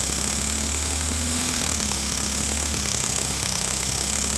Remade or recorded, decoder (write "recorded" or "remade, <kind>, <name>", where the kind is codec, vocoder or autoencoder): remade, autoencoder, DAC-VAE